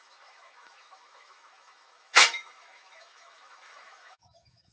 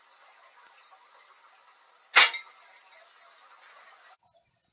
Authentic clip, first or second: second